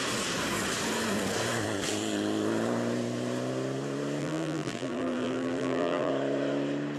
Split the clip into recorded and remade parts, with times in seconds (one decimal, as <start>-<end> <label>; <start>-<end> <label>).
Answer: 0.0-4.2 recorded; 4.2-6.1 remade; 6.1-7.0 recorded